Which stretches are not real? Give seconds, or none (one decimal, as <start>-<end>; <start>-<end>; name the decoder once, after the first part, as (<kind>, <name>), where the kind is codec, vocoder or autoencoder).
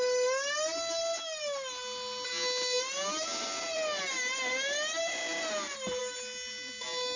none